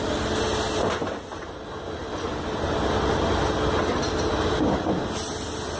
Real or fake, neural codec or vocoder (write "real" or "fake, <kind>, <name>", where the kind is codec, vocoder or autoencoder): real